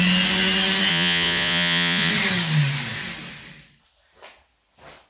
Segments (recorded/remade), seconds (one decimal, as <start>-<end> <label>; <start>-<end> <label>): 0.0-0.9 recorded; 0.9-2.1 remade; 2.1-5.1 recorded